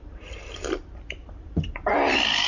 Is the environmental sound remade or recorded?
recorded